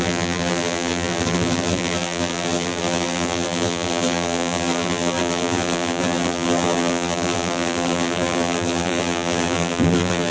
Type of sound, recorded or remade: remade